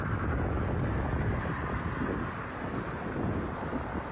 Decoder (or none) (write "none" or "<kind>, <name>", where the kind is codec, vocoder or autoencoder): none